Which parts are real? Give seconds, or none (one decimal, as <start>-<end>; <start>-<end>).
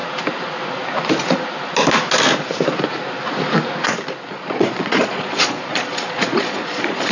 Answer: 0.0-4.3